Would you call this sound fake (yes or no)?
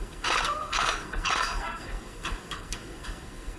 yes